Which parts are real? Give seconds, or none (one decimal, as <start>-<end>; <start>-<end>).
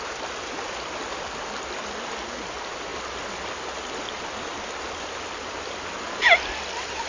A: 0.0-7.1